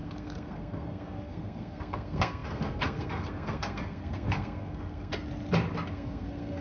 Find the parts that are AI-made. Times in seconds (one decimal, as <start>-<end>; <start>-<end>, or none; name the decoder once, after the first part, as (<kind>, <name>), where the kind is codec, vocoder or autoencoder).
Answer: 0.0-5.1 (codec, SNAC); 5.9-6.6